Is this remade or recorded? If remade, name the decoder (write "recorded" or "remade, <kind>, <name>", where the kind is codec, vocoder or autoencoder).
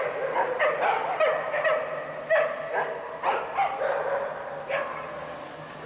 recorded